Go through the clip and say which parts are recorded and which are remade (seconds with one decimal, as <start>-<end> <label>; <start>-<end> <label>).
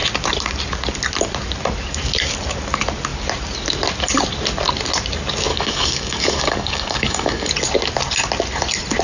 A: 0.0-5.5 recorded; 5.5-7.5 remade; 7.5-9.0 recorded